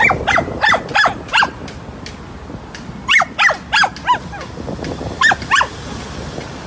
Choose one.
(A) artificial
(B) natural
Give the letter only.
B